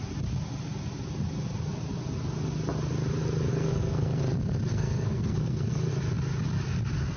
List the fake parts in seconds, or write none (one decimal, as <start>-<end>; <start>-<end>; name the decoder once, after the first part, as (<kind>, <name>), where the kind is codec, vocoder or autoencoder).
3.5-4.2 (codec, SNAC); 4.7-5.9